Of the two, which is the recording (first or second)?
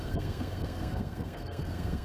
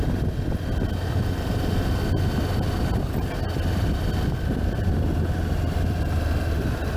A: second